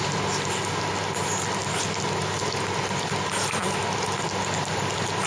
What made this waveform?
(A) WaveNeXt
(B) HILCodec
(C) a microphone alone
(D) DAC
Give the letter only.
C